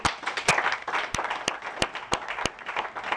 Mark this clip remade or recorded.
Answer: recorded